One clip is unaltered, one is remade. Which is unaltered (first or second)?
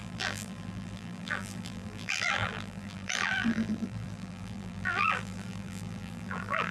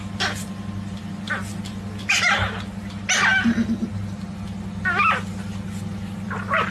second